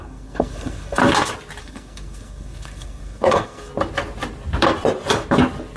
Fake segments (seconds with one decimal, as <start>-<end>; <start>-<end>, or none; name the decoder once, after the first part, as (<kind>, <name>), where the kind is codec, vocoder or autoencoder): 0.0-1.0 (codec, SNAC); 1.6-3.7